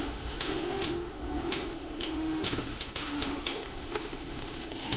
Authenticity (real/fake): fake